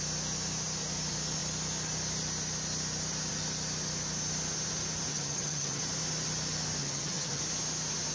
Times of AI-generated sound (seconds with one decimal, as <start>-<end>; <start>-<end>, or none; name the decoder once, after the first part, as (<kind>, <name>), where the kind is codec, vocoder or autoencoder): 5.1-5.8 (vocoder, HiFi-GAN); 6.8-7.4